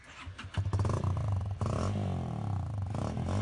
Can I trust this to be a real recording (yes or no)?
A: yes